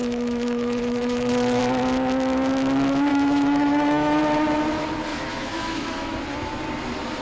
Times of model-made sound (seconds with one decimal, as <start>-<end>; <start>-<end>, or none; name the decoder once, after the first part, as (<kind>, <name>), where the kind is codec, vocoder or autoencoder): 0.0-1.6 (autoencoder, DAC-VAE); 3.1-4.2; 5.1-6.2